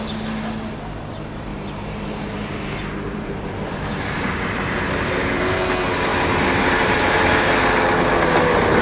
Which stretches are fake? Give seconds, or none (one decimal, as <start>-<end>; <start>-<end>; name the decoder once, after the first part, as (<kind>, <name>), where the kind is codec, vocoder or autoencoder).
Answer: 1.5-5.4 (vocoder, BigVGAN v2); 6.1-7.2